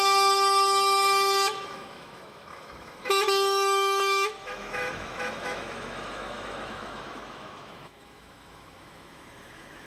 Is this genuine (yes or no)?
no